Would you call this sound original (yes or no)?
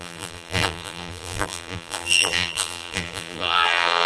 no